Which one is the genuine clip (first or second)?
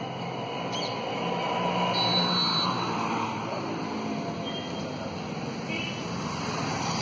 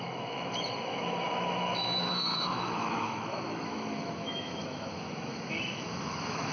first